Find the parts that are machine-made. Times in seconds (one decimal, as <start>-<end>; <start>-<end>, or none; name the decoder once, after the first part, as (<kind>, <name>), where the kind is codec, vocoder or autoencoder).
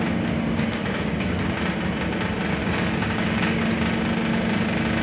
0.8-1.3 (codec, DAC); 2.6-3.6